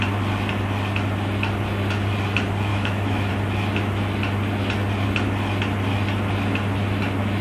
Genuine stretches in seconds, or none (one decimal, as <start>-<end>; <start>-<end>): 0.0-2.7; 3.3-7.4